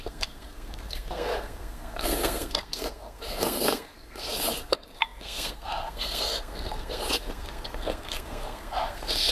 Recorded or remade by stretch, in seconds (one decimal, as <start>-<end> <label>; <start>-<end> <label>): 0.0-9.3 remade